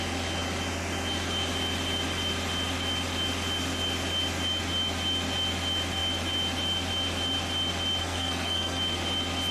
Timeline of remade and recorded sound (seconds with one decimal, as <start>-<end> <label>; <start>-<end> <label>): 0.0-8.0 recorded; 8.0-8.8 remade; 8.8-9.5 recorded